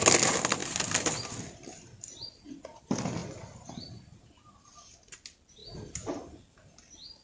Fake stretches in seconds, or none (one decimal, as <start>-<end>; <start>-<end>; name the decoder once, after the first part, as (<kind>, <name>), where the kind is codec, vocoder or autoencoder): 3.2-4.7 (vocoder, BigVGAN v2); 5.6-6.1